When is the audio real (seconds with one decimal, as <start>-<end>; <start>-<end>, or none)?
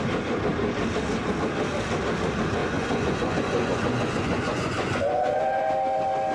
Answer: 0.0-2.6; 5.7-6.3